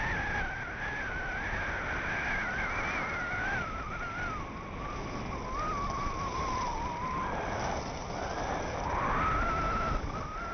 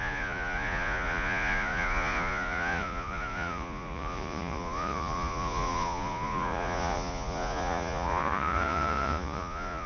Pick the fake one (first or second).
second